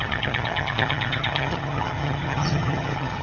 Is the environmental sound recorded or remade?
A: remade